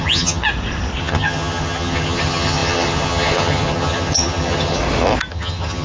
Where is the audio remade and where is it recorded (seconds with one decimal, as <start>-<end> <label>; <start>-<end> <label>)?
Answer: 0.0-0.4 remade; 0.4-1.0 recorded; 1.0-4.8 remade; 4.8-5.3 recorded; 5.3-5.8 remade